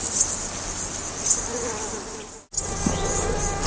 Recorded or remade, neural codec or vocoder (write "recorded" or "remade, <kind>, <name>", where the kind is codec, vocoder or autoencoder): recorded